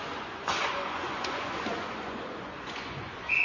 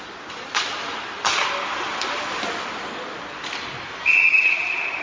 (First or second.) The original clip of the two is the second